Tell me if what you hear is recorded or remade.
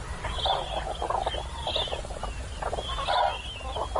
recorded